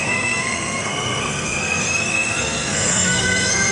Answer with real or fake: fake